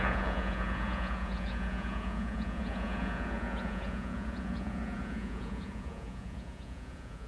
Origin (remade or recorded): remade